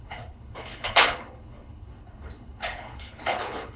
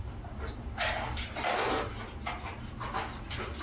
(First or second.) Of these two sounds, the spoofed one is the first